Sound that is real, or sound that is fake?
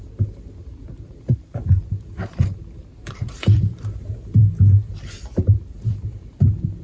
fake